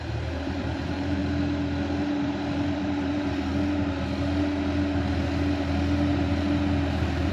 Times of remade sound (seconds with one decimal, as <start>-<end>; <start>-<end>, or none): 0.0-1.2; 2.2-3.5